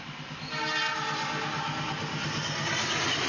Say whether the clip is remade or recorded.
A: recorded